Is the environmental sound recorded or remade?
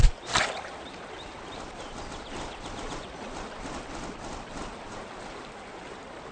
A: recorded